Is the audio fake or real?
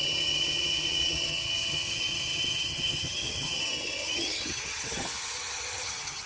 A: fake